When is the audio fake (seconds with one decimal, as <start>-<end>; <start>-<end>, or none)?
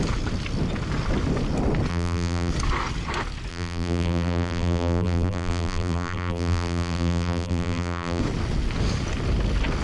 1.9-2.5; 3.5-8.2